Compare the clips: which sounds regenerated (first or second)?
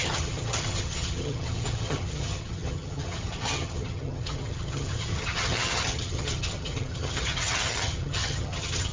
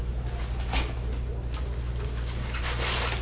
first